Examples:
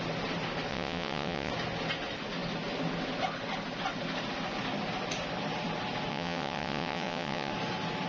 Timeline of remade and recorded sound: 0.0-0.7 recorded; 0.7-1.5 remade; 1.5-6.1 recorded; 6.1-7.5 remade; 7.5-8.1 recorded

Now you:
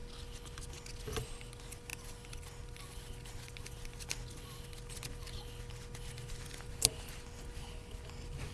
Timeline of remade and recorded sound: 0.0-8.5 recorded

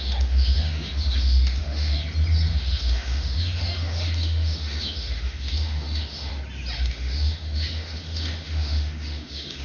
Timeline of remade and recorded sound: 0.0-2.0 remade; 2.0-2.5 recorded; 2.5-6.3 remade; 6.3-6.9 recorded; 6.9-9.6 remade

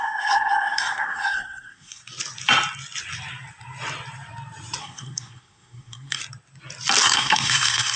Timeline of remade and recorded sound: 0.0-2.0 remade; 2.0-4.8 recorded; 4.8-6.2 remade; 6.2-7.0 recorded; 7.0-8.0 remade

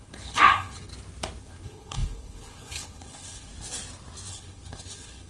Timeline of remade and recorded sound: 0.0-0.9 remade; 0.9-1.4 recorded; 1.4-3.5 remade; 3.5-4.3 recorded; 4.3-5.3 remade